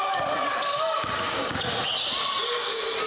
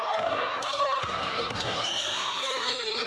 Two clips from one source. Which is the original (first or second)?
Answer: first